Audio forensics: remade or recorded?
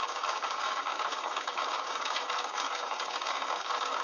remade